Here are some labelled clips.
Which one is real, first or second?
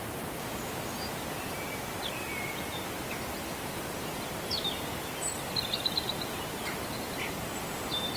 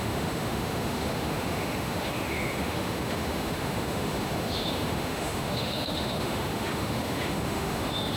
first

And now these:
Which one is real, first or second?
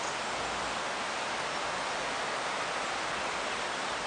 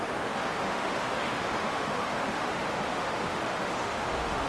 first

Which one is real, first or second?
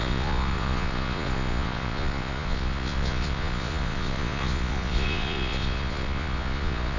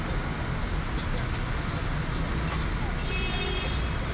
second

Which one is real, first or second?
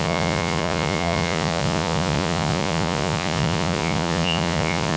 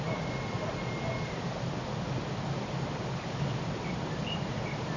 second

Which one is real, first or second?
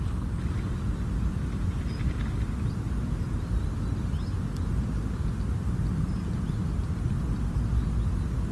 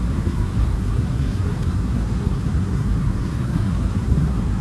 first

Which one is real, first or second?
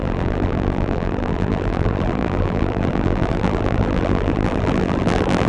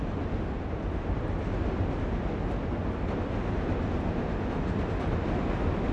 second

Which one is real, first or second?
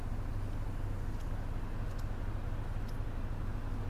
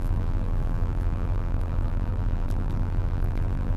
first